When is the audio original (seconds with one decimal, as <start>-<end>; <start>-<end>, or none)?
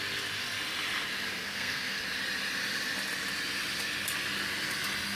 0.0-1.4; 2.0-5.2